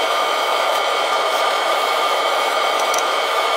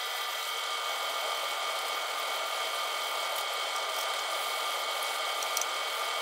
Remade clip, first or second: first